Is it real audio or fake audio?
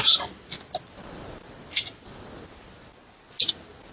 real